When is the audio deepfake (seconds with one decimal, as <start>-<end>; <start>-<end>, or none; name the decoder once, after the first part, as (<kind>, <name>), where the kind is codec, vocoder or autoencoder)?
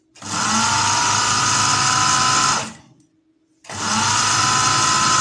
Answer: none